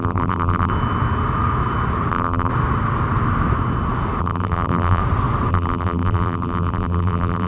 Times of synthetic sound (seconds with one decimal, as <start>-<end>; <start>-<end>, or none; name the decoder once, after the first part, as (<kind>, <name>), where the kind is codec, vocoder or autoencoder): 0.0-0.7 (vocoder, BigVGAN v2); 2.1-2.5; 4.2-5.0; 5.5-7.5